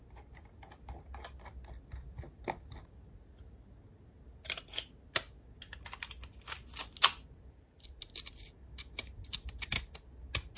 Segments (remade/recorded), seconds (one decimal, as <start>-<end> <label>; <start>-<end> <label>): 0.0-10.6 recorded